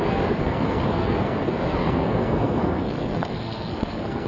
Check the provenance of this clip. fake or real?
fake